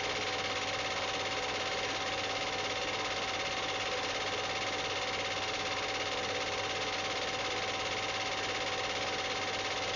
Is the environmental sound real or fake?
real